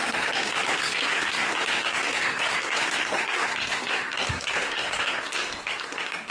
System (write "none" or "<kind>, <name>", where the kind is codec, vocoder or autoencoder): codec, SNAC